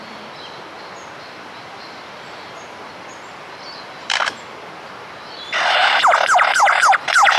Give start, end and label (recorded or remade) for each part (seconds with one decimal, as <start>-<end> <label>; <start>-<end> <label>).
0.0-1.0 recorded; 1.0-4.7 remade; 4.7-5.8 recorded; 5.8-6.8 remade; 6.8-7.4 recorded